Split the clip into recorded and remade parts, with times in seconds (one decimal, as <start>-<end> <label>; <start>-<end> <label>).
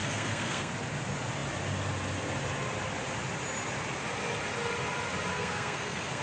0.0-0.7 remade; 0.7-5.3 recorded; 5.3-6.2 remade